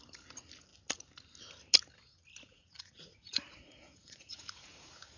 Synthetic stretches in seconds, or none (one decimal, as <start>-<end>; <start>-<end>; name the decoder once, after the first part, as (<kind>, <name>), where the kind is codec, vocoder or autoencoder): 2.5-5.2 (vocoder, Vocos)